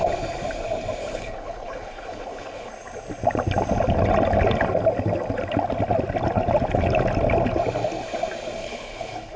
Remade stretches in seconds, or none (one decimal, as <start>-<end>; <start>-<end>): 1.0-2.7; 8.6-9.4